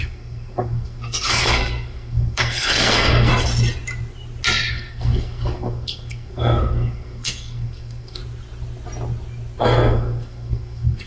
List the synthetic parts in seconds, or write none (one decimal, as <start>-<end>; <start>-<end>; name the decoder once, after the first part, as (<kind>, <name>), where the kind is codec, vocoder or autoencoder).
0.0-3.3 (codec, SNAC); 4.7-8.2; 9.6-11.1